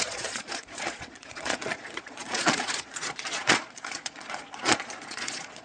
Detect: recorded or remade remade